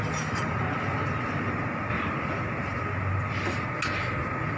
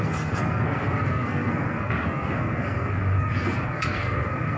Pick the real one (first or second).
first